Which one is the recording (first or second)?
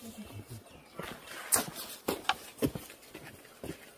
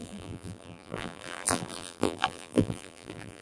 first